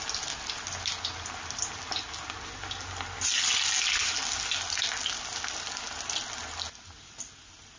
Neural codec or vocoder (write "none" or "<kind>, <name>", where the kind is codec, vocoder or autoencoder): none